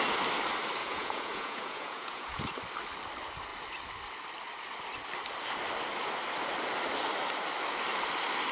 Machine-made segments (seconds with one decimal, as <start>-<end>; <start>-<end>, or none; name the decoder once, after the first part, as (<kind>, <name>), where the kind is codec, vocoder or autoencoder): 0.8-2.4 (vocoder, Vocos)